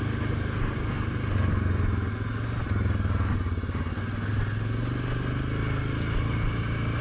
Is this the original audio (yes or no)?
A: yes